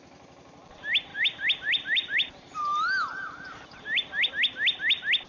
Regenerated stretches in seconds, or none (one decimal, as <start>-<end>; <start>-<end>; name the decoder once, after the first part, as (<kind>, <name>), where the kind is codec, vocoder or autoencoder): 1.1-4.3 (vocoder, BigVGAN v2)